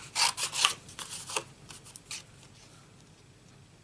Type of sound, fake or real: real